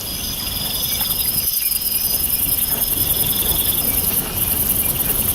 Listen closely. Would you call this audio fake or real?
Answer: real